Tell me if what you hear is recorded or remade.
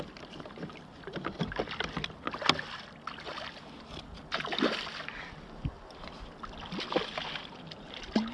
recorded